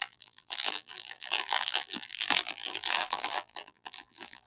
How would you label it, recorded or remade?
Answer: remade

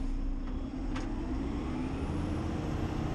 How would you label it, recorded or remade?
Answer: recorded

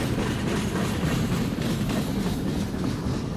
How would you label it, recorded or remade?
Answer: recorded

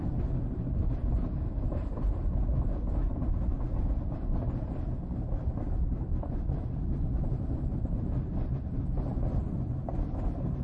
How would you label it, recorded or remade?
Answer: recorded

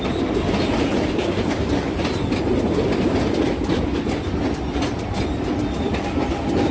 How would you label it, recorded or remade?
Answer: recorded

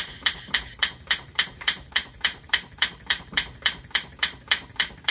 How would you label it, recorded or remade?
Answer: remade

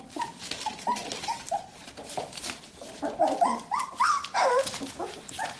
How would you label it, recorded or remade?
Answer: recorded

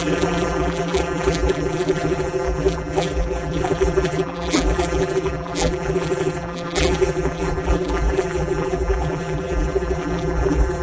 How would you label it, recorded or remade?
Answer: remade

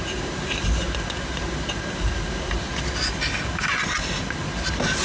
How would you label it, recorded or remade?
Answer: recorded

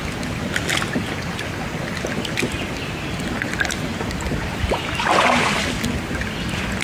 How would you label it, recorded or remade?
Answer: recorded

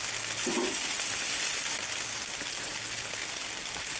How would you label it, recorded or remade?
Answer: recorded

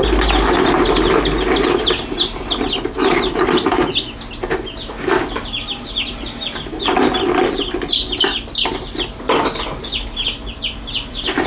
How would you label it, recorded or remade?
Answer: recorded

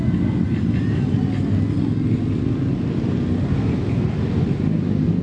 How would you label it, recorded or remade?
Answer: recorded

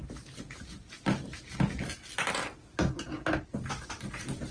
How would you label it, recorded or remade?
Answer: recorded